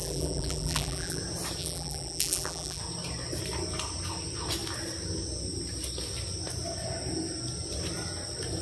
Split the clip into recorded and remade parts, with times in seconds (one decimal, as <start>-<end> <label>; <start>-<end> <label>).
0.0-1.2 remade; 1.2-1.6 recorded; 1.6-2.8 remade; 2.8-8.6 recorded